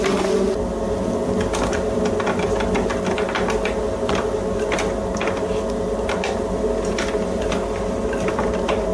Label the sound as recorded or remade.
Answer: recorded